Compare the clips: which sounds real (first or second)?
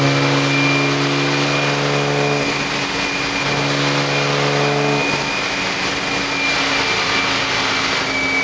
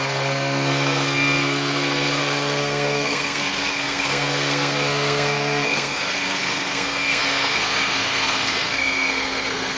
first